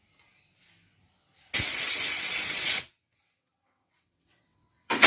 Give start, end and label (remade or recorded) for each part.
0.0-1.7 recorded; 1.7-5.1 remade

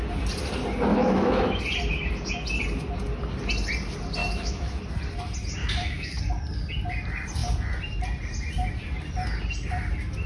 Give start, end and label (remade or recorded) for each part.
0.0-0.9 recorded; 0.9-1.6 remade; 1.6-4.2 recorded; 4.2-4.8 remade; 4.8-5.6 recorded; 5.6-6.2 remade; 6.2-10.3 recorded

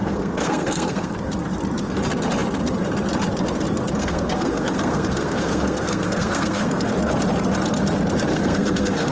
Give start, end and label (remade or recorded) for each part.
0.0-1.1 remade; 1.1-4.0 recorded; 4.0-6.9 remade; 6.9-8.3 recorded; 8.3-9.1 remade

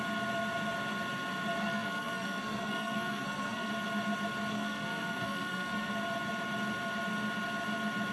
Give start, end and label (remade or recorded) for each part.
0.0-1.6 recorded; 1.6-3.7 remade; 3.7-4.5 recorded; 4.5-5.9 remade; 5.9-8.1 recorded

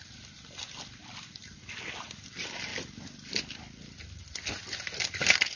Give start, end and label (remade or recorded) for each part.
0.0-5.6 recorded